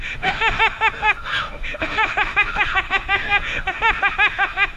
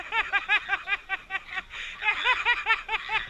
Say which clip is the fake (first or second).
first